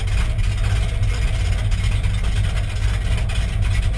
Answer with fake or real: real